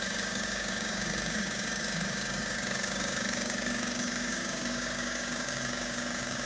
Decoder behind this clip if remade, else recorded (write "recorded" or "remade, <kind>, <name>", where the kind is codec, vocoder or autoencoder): remade, codec, DAC